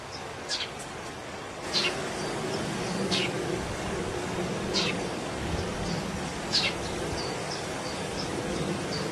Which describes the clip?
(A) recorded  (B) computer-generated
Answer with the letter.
B